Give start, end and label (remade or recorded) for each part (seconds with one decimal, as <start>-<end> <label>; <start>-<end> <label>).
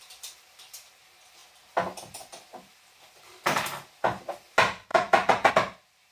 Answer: 0.0-4.9 recorded; 4.9-5.5 remade; 5.5-6.1 recorded